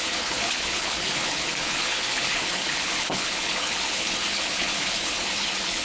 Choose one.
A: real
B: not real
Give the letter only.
B